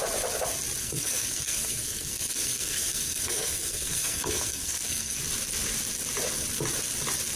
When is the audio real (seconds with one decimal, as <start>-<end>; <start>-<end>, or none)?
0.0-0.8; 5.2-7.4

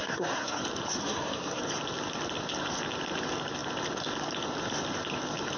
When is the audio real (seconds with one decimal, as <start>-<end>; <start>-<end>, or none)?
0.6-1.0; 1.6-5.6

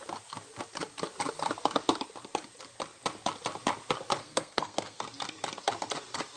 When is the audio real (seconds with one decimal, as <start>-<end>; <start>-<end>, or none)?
0.0-4.2; 5.0-6.4

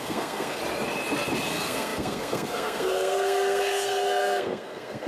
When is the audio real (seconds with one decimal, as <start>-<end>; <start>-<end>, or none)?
0.6-1.5

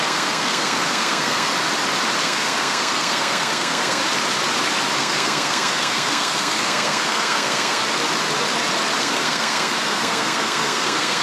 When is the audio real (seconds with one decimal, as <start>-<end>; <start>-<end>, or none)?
1.5-2.2; 4.0-5.0; 7.8-9.0